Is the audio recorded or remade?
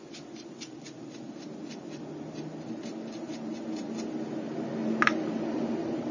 recorded